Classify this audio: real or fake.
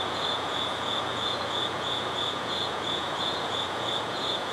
fake